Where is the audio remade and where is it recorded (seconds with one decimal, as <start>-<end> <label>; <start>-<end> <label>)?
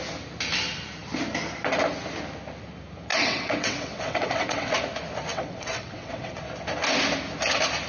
0.0-3.1 recorded; 3.1-4.7 remade; 4.7-5.3 recorded; 5.3-6.4 remade; 6.4-7.9 recorded